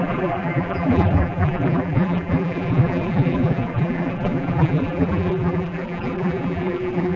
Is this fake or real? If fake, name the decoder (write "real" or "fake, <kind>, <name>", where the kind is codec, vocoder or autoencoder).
fake, vocoder, BigVGAN v2